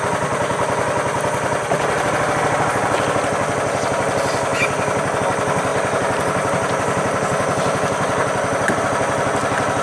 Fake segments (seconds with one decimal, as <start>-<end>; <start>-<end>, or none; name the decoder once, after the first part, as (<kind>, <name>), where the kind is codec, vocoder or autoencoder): 4.5-5.2 (vocoder, BigVGAN v2); 5.7-8.8